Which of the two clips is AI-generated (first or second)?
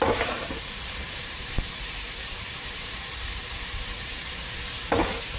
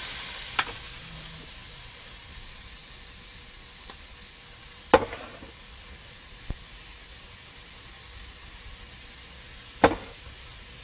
first